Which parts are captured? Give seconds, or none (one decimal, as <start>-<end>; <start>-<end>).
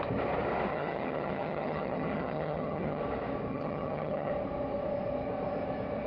0.0-0.7; 3.0-3.5; 4.3-6.1